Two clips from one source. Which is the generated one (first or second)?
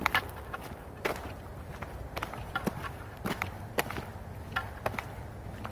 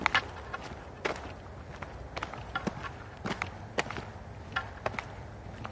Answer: first